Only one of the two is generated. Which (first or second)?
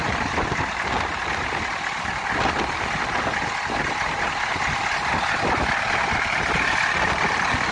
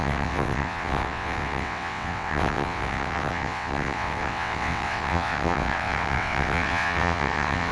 second